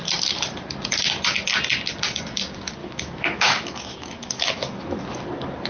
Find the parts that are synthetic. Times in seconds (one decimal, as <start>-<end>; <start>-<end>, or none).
2.8-5.0